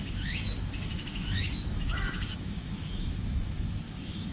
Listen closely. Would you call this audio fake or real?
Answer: fake